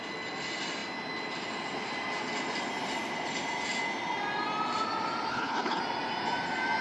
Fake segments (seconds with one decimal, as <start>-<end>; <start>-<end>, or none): 5.3-5.8

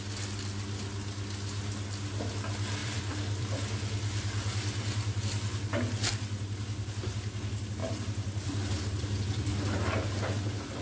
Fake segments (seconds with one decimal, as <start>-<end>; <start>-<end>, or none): 2.8-5.2; 7.8-8.8

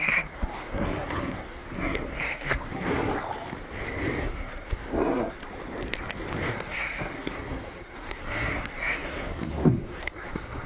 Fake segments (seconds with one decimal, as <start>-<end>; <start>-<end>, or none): 0.0-3.1; 4.2-5.4; 6.5-10.7

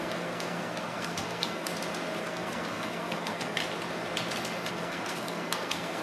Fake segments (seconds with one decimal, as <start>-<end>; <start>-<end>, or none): 0.0-1.7; 2.2-3.6; 4.7-6.0

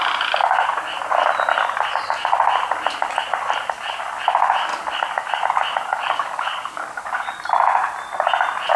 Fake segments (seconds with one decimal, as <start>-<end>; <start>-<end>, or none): 4.7-5.4; 5.9-7.3